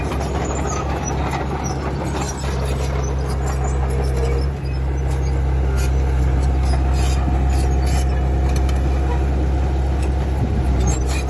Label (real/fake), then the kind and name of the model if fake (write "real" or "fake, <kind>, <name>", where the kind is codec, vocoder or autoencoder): real